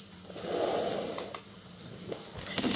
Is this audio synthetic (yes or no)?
no